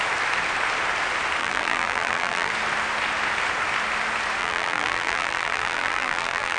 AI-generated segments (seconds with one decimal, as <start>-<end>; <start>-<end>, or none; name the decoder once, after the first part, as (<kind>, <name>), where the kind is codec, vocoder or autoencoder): 1.4-2.5 (vocoder, BigVGAN v2); 4.4-6.6